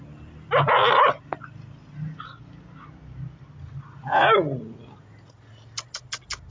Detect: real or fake real